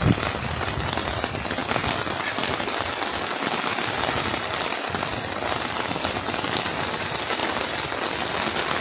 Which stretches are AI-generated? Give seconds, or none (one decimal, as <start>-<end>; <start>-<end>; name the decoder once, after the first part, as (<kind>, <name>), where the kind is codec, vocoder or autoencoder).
none